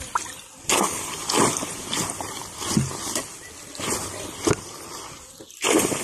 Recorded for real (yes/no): yes